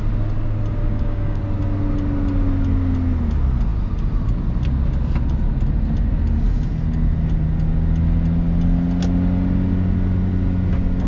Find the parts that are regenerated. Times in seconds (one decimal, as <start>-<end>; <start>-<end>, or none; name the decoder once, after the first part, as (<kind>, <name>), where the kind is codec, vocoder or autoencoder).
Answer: 0.8-1.4 (codec, DAC)